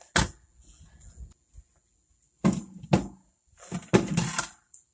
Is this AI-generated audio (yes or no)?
no